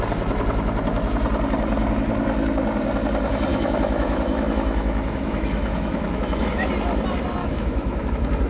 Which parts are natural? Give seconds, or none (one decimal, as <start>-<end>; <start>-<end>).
0.0-3.5; 6.7-7.4; 8.1-8.5

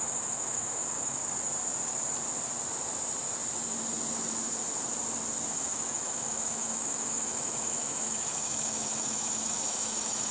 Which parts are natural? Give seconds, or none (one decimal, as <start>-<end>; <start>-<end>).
1.2-5.5